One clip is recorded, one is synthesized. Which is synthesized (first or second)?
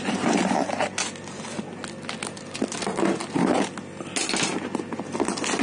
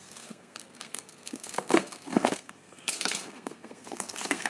second